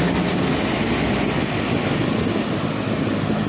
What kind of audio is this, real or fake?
real